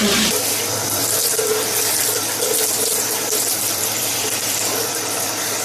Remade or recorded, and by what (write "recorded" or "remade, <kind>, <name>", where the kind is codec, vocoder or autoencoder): remade, vocoder, BigVGAN v2